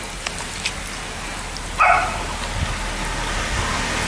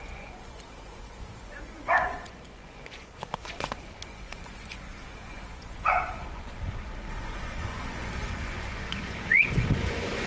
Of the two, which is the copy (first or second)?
second